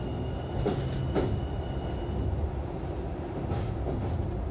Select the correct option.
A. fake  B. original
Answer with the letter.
B